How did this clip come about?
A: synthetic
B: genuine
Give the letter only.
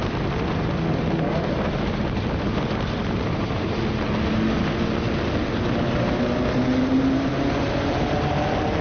B